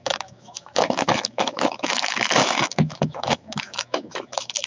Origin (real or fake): fake